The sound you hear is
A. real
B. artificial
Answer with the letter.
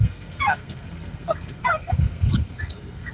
B